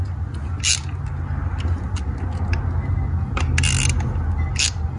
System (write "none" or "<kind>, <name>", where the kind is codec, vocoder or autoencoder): none